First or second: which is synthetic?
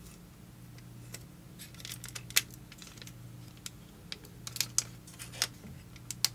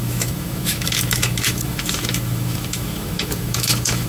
second